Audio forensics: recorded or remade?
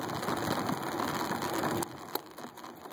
recorded